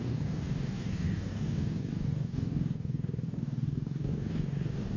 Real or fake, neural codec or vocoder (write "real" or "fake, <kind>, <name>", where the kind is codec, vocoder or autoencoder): fake, codec, DAC